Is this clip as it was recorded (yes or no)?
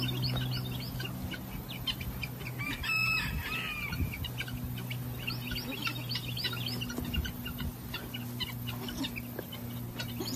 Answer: yes